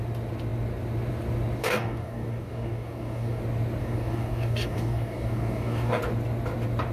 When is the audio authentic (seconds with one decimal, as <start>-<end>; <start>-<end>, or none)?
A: 0.0-1.6; 3.4-3.8; 6.0-6.9